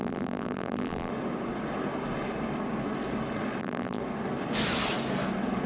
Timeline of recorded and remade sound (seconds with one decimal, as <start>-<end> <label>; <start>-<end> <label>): 0.0-1.1 remade; 1.1-3.6 recorded; 3.6-4.0 remade; 4.0-5.7 recorded